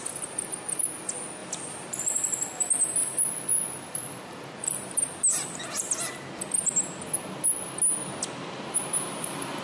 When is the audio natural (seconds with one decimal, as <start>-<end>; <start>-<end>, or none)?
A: 0.0-1.4; 2.0-3.0; 4.2-9.6